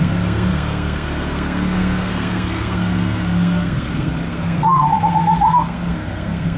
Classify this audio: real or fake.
fake